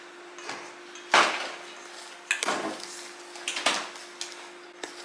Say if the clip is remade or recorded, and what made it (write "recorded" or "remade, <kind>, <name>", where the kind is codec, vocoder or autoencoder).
recorded